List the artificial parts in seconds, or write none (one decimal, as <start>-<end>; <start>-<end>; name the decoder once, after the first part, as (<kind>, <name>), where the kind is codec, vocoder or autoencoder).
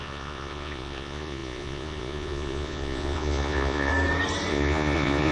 0.0-3.9 (vocoder, Vocos); 4.5-5.3